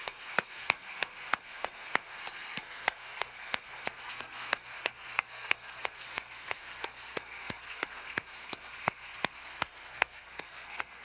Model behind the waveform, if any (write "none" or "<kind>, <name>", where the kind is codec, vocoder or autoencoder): codec, SNAC